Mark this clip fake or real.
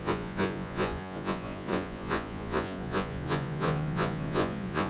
fake